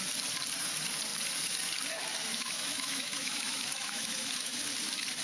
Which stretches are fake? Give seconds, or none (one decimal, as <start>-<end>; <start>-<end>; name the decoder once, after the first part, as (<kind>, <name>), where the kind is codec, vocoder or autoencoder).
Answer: 2.3-4.5 (autoencoder, DAC-VAE)